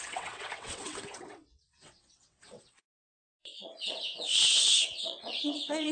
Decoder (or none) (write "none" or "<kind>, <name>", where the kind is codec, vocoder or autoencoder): vocoder, WaveNeXt